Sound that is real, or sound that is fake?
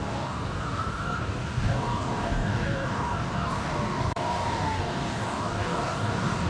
fake